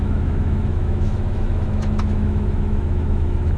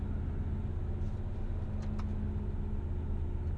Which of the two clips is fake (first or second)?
first